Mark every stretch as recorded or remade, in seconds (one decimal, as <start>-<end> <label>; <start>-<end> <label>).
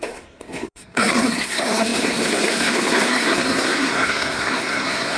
0.0-5.2 remade